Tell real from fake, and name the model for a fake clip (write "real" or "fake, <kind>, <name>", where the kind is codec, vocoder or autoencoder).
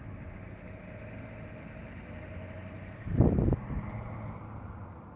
real